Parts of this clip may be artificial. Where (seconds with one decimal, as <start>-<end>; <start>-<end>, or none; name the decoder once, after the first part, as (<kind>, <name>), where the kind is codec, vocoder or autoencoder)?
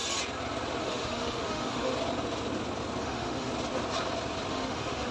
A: 0.8-1.9 (autoencoder, DAC-VAE); 3.0-3.5; 4.5-5.1